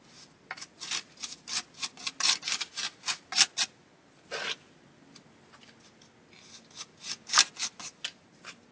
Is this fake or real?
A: real